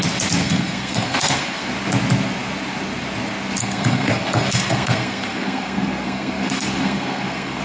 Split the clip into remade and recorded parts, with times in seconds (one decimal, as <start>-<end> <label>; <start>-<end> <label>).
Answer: 0.0-0.4 recorded; 0.4-1.7 remade; 1.7-3.6 recorded; 3.6-7.6 remade